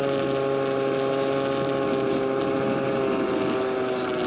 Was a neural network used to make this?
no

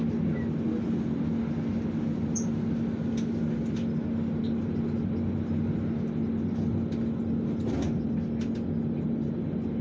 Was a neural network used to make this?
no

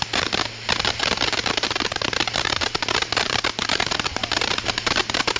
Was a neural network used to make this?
no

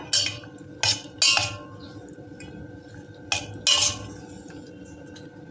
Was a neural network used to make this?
no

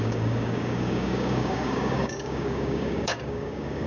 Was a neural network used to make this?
yes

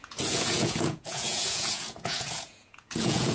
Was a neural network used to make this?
yes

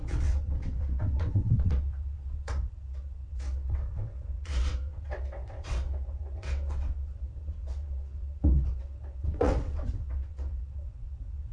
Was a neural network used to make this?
yes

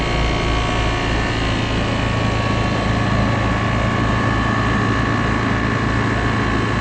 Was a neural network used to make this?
no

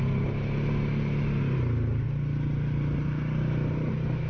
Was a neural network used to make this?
no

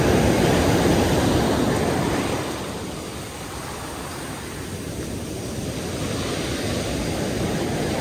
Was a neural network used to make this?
no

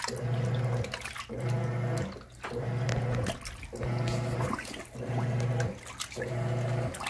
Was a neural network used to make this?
no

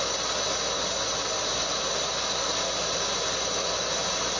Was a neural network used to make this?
no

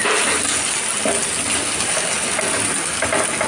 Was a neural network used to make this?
no